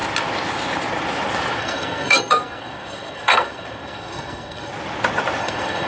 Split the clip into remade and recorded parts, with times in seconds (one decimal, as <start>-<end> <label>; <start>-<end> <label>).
0.0-1.6 recorded; 1.6-4.7 remade; 4.7-5.4 recorded; 5.4-5.9 remade